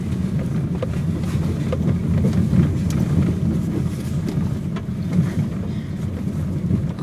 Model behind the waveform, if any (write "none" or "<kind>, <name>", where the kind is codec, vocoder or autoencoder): none